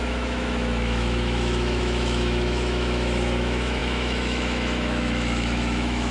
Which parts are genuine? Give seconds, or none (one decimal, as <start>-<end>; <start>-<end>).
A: none